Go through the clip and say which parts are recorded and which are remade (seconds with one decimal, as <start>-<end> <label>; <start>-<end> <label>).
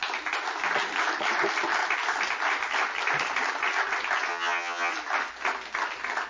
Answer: 0.0-4.3 recorded; 4.3-4.9 remade; 4.9-6.3 recorded